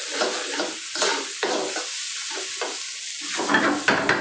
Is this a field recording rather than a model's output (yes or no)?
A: yes